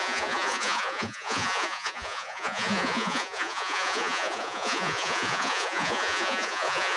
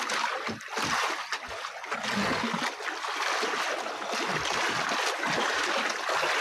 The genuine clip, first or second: second